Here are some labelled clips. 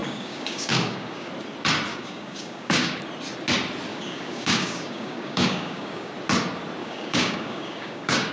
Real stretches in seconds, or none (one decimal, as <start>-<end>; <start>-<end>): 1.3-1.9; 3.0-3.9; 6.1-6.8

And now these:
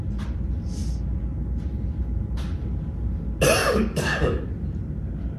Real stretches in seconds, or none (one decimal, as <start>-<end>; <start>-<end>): 0.0-3.6; 4.4-5.4

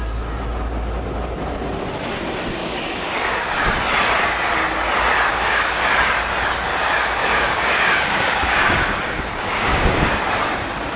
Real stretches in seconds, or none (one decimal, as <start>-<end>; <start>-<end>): 0.0-2.6; 3.4-5.3; 5.9-7.2; 10.2-11.0

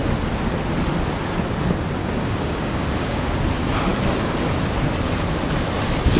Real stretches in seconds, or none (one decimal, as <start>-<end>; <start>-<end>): 0.0-2.0; 3.4-6.2

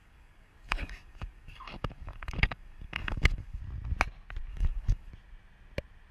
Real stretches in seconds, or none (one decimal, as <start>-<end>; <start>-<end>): 3.6-4.5; 5.1-6.1